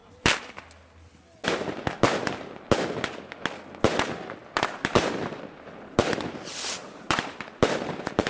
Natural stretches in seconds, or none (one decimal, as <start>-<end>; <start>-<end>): 0.6-4.4; 6.2-6.8